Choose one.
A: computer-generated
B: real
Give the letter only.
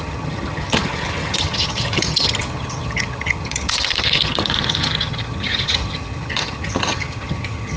A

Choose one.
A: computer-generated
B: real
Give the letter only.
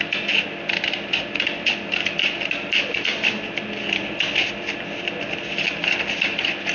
B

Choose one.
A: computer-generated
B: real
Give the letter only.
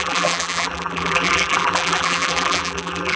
A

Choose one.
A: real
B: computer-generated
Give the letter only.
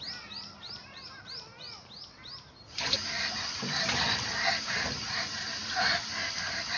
B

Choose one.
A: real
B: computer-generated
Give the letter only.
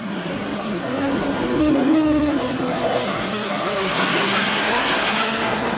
B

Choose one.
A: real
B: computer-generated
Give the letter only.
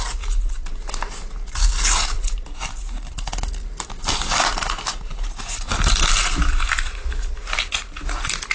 A